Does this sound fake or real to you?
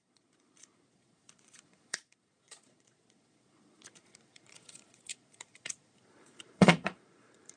fake